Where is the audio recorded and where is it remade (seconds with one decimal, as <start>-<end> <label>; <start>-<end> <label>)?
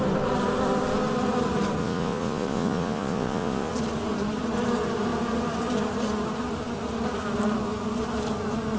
0.0-1.8 recorded; 1.8-3.7 remade; 3.7-8.8 recorded